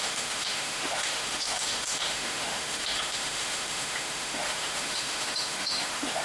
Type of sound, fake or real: fake